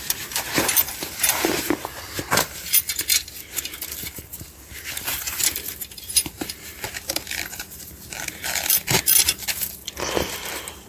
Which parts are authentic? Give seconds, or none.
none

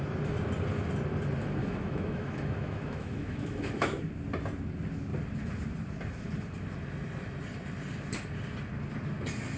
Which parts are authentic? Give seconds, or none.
0.0-1.6; 4.1-9.6

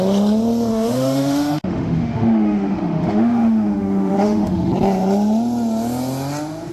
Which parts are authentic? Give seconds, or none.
0.0-0.7; 4.7-6.7

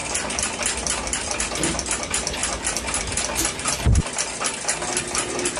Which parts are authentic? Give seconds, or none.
0.0-5.6

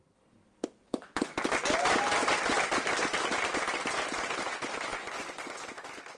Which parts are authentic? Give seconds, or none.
0.0-0.8; 1.4-4.9; 5.6-6.2